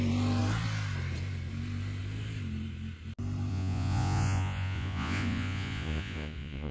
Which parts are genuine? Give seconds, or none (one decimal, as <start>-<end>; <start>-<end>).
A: 0.0-3.5